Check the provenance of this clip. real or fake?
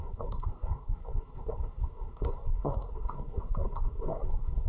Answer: fake